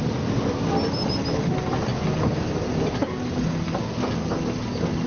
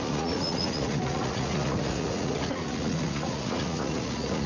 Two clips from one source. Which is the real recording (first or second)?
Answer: first